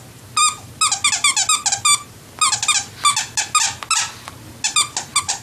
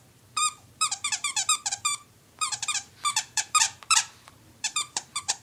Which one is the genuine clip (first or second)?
first